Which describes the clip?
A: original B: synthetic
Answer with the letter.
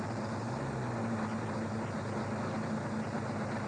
A